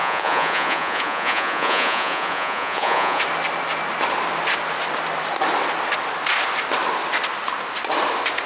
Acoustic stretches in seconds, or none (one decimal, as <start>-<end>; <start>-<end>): 3.2-8.5